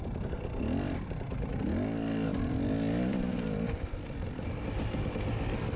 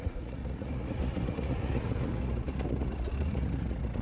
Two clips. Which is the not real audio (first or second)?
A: second